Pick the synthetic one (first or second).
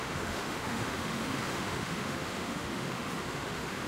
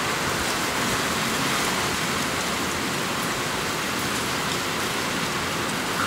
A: first